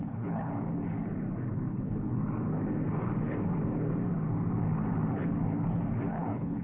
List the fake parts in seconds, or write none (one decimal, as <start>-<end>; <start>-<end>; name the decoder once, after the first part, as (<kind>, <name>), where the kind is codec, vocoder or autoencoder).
0.0-0.5 (codec, HILCodec); 1.7-2.1; 6.1-6.6